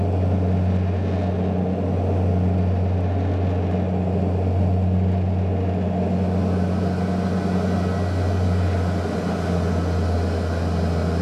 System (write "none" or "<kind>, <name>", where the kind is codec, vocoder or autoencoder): none